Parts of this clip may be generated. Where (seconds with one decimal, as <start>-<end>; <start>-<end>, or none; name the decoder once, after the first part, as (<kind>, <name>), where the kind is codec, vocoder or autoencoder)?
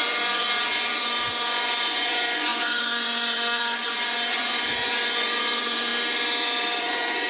0.0-5.9 (vocoder, Vocos); 6.8-7.3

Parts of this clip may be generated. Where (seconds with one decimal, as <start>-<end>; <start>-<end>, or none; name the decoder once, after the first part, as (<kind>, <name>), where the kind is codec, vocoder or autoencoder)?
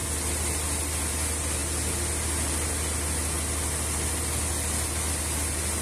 none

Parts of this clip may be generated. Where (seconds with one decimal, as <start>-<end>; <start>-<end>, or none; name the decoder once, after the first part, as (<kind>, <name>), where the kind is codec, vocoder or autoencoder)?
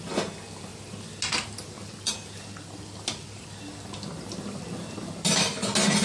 none